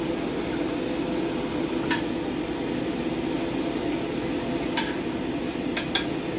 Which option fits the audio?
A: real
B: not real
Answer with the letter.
A